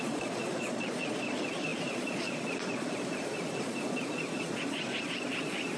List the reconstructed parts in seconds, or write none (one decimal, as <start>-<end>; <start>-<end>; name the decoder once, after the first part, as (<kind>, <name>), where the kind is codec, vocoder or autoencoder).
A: 0.0-5.8 (vocoder, Vocos)